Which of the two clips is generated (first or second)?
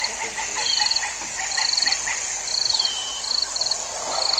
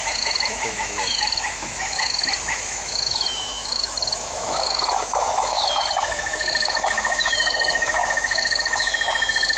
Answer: second